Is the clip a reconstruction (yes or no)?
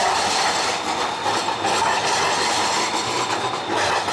no